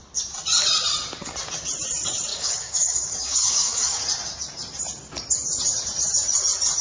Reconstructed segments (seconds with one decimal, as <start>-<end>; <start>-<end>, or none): 2.3-4.0